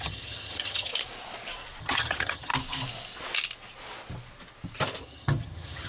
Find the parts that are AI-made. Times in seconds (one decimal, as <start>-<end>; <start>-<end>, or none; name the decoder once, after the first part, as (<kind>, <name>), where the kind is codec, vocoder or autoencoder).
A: 0.0-0.9 (vocoder, HiFi-GAN); 1.8-2.5; 5.0-5.9